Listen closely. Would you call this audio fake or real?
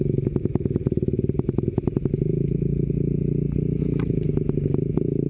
real